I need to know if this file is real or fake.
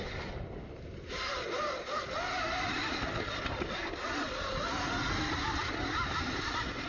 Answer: real